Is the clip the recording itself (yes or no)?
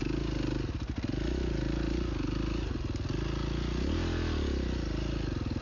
yes